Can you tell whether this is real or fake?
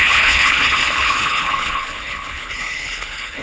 fake